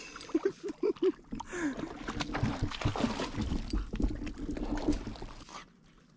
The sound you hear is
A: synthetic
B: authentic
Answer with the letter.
B